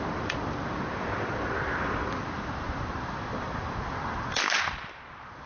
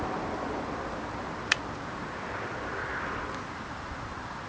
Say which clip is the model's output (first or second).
first